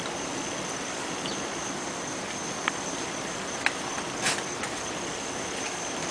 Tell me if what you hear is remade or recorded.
recorded